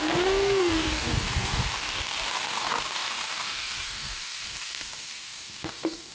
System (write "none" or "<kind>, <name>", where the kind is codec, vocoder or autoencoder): codec, DAC